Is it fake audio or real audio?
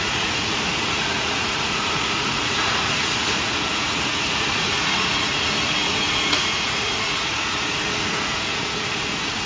fake